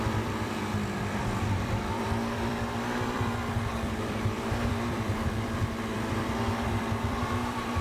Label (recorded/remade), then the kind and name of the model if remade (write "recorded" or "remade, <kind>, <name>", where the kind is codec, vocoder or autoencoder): remade, vocoder, BigVGAN v2